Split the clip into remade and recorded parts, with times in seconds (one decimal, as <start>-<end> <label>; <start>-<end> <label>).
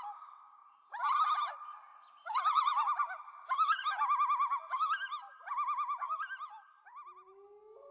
0.0-0.6 recorded; 0.6-1.5 remade; 1.5-1.9 recorded; 1.9-3.8 remade; 3.8-7.9 recorded